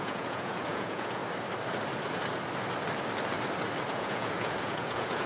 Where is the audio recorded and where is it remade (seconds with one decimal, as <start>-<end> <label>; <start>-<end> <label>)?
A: 0.0-1.2 remade; 1.2-3.9 recorded; 3.9-5.3 remade